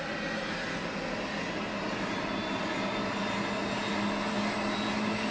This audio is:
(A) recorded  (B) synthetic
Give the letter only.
A